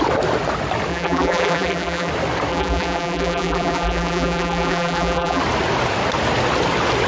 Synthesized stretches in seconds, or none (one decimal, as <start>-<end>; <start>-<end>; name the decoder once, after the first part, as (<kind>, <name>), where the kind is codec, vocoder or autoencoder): 0.9-2.1 (vocoder, BigVGAN v2); 2.5-5.4